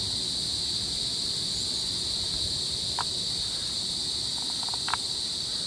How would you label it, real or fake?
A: real